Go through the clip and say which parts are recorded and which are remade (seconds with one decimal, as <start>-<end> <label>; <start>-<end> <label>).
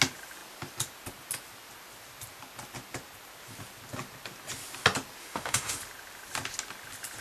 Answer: 0.0-5.2 recorded; 5.2-5.8 remade; 5.8-7.2 recorded